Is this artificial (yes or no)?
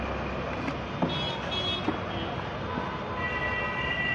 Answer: no